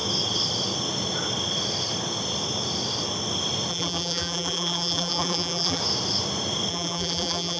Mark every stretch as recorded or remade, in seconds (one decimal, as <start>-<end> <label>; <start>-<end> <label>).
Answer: 0.0-3.7 recorded; 3.7-5.8 remade; 5.8-6.7 recorded; 6.7-7.6 remade